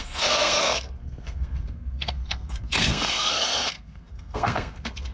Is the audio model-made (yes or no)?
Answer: yes